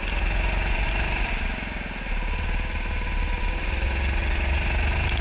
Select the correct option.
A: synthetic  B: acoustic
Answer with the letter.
B